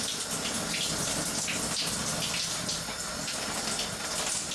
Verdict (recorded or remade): recorded